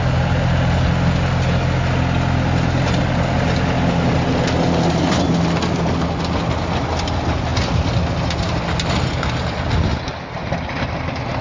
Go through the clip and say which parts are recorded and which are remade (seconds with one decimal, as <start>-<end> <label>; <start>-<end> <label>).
0.0-11.4 recorded